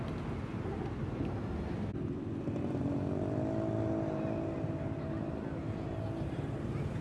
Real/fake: real